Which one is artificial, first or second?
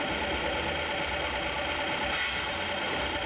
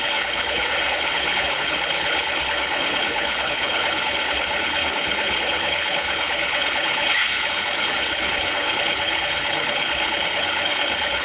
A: second